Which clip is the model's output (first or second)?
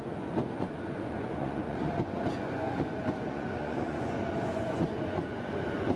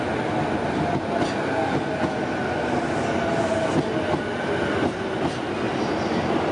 first